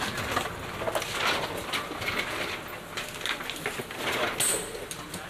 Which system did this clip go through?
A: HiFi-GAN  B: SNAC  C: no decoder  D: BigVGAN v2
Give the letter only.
C